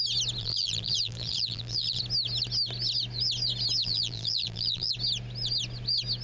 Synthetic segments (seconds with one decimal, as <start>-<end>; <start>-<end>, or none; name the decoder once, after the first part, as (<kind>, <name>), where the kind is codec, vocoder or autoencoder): 0.4-2.0 (vocoder, BigVGAN v2); 3.8-4.9